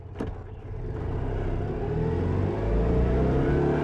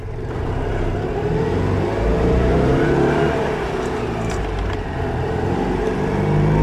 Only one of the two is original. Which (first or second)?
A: first